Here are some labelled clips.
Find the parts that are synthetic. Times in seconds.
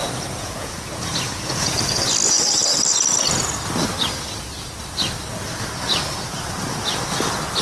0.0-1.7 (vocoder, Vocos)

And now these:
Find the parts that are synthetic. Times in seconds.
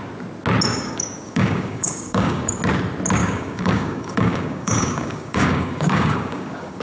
0.7-2.6 (codec, DAC); 3.2-6.8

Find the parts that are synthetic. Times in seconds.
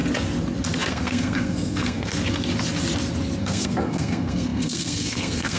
0.9-2.1 (codec, SNAC); 3.4-5.6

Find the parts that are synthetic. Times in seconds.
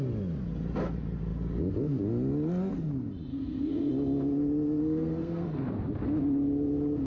3.3-3.9 (codec, SNAC); 4.8-5.6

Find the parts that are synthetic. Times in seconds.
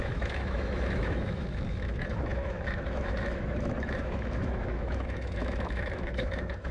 0.0-6.7 (autoencoder, DAC-VAE)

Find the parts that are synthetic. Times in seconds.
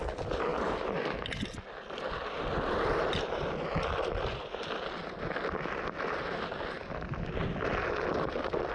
none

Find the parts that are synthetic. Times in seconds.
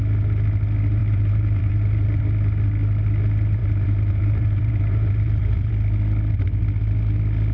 1.0-2.2 (vocoder, BigVGAN v2); 3.6-5.7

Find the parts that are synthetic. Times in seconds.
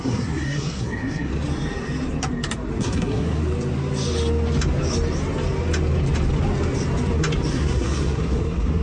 0.0-1.3 (codec, SNAC); 2.8-3.4; 7.5-8.8